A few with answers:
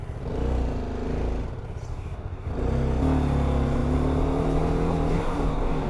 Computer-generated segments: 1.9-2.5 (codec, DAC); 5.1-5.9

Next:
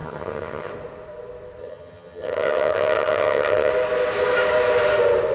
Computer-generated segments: 0.0-0.7 (vocoder, HiFi-GAN); 1.6-3.7

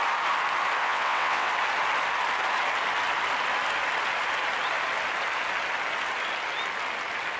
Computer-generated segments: 0.8-1.5 (vocoder, WaveNeXt)